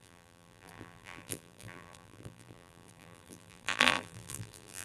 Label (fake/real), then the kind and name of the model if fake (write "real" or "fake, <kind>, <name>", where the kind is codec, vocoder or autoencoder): fake, vocoder, BigVGAN v2